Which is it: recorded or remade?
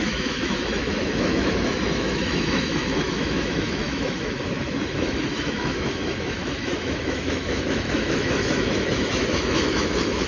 remade